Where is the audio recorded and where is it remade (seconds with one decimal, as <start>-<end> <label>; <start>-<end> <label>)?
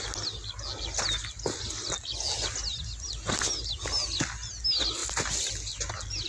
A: 0.0-6.3 recorded